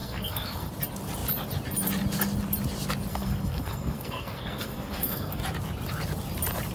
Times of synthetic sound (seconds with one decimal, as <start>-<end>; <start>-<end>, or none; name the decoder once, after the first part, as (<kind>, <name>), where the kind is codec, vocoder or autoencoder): 0.0-0.7 (codec, SNAC); 3.1-5.4